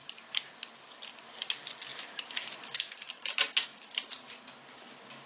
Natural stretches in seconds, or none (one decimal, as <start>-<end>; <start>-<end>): 0.0-5.3